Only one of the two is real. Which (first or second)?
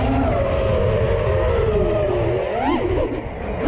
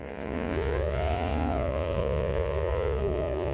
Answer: first